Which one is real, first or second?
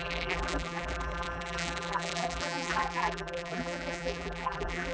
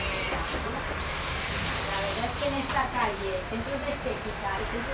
second